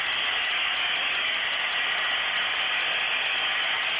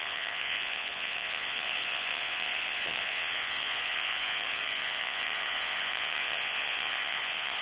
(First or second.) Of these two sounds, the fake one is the second